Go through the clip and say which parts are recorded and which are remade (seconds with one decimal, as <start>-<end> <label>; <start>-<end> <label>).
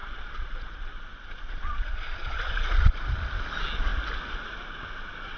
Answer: 0.0-3.2 remade; 3.2-5.4 recorded